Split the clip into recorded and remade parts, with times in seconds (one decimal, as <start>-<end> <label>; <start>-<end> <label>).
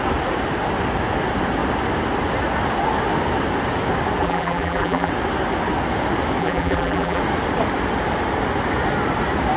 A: 0.0-4.2 recorded; 4.2-5.1 remade; 5.1-6.4 recorded; 6.4-7.2 remade; 7.2-9.6 recorded